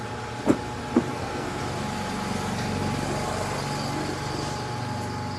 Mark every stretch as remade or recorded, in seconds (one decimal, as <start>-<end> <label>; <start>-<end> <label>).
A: 0.0-1.1 recorded; 1.1-1.6 remade; 1.6-5.4 recorded